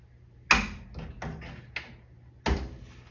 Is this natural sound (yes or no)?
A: yes